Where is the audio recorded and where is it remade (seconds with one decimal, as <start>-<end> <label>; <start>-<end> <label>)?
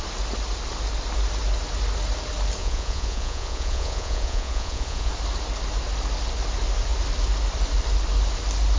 0.0-2.6 recorded; 2.6-5.1 remade; 5.1-8.8 recorded